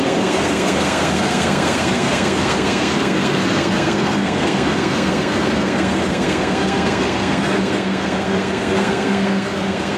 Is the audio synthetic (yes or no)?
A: yes